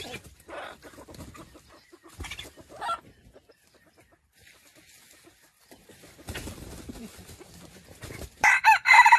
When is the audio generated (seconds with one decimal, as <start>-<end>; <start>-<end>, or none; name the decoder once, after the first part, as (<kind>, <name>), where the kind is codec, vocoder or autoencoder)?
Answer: 0.0-2.0 (vocoder, BigVGAN v2); 5.7-9.2